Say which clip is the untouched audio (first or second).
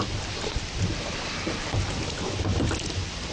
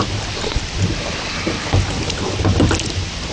second